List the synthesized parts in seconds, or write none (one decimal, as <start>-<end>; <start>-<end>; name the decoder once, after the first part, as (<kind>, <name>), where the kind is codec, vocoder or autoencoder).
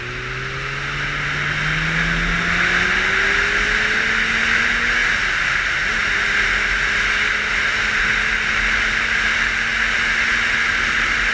none